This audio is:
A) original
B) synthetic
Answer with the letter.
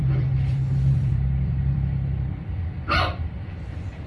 B